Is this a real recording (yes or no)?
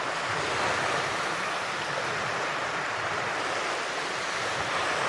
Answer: yes